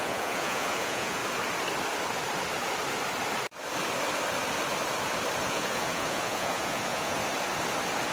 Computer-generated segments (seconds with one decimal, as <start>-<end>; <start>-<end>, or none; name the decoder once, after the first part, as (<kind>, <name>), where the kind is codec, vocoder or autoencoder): 0.0-1.2 (vocoder, Vocos); 5.5-7.2